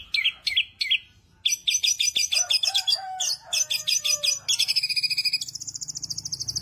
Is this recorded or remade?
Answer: recorded